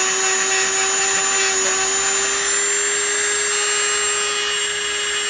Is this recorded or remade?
recorded